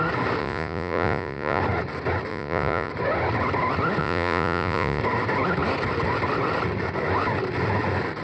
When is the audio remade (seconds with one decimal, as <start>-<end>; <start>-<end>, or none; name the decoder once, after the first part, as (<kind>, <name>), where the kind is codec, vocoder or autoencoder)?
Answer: 0.4-1.6 (vocoder, Vocos); 2.3-2.9; 4.0-5.0